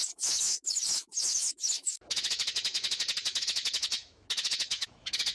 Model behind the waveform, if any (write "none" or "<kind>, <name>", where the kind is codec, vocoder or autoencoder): autoencoder, DAC-VAE